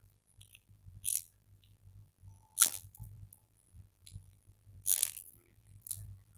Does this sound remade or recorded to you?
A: remade